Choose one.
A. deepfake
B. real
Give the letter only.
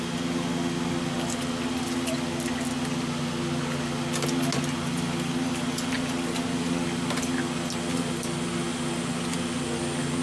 B